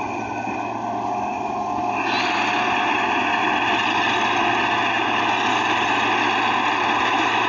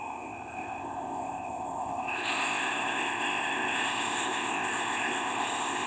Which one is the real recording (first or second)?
first